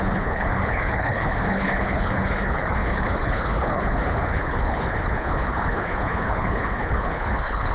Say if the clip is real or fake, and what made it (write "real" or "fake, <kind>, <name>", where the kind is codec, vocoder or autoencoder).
fake, codec, HILCodec